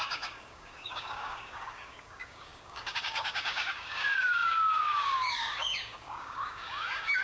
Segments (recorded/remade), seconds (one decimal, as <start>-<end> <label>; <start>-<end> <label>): 0.0-7.2 remade